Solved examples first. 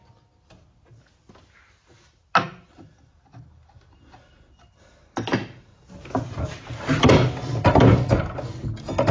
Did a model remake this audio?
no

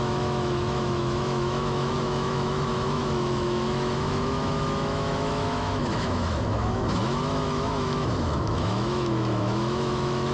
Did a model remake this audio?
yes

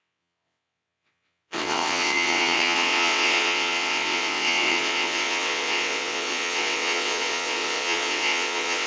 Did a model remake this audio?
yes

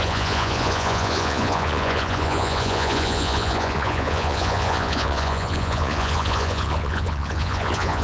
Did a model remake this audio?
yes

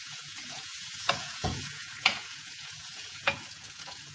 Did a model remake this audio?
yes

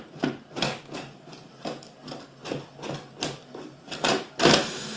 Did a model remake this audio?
no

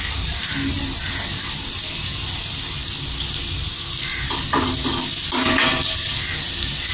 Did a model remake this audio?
no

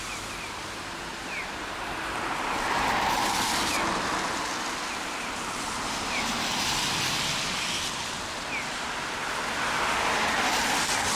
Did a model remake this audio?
no